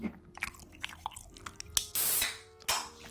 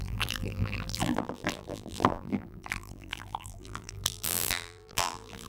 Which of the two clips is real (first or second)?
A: first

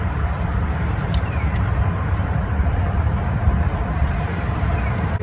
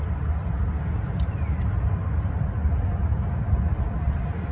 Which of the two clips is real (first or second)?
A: second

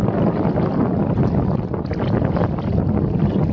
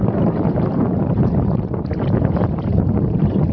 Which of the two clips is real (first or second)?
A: first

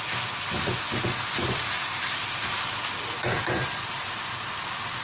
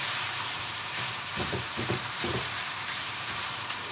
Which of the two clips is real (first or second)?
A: first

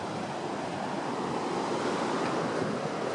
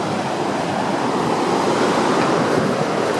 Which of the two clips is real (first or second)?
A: first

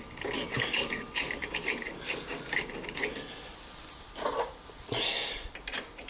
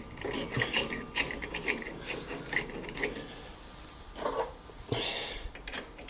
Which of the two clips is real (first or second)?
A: second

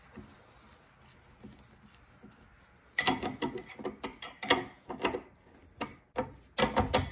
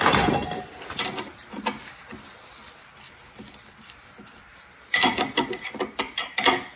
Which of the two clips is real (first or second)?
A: first